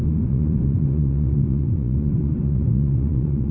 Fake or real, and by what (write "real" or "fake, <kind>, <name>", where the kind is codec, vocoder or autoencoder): fake, vocoder, Vocos